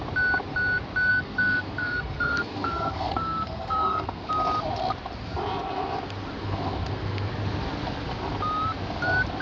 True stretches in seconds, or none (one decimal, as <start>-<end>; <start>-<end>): 0.0-1.1; 4.3-6.4; 7.3-9.4